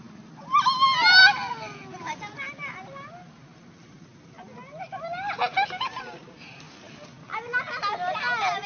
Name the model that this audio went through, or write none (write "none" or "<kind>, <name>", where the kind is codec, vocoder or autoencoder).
none